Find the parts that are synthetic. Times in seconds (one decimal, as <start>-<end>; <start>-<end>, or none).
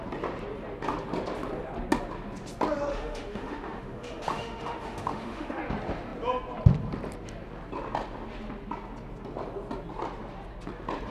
2.9-5.6